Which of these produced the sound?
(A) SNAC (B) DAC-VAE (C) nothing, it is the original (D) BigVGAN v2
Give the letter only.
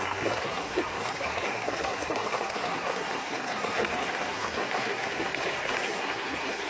A